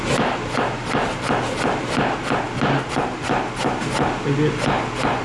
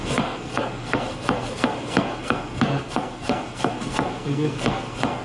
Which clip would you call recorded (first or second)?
first